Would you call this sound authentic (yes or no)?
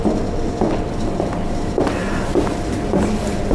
yes